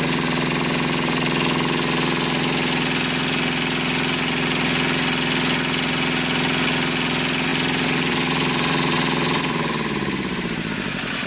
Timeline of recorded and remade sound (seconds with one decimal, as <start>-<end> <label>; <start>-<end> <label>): 0.0-7.5 recorded; 7.5-10.7 remade; 10.7-11.3 recorded